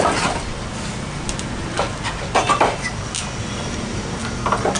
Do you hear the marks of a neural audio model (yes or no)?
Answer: no